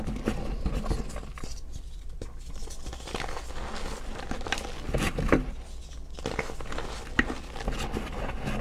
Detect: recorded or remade recorded